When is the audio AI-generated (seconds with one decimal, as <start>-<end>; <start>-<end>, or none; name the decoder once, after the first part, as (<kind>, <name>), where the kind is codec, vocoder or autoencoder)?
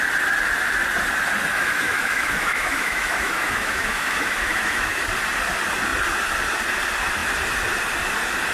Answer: 1.5-5.0 (autoencoder, DAC-VAE)